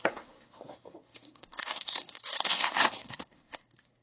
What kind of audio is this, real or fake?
fake